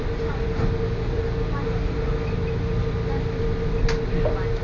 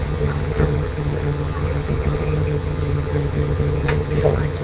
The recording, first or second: first